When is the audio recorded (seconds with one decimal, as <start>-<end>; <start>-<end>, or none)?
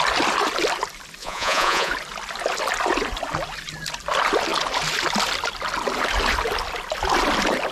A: 0.0-1.2; 1.9-7.7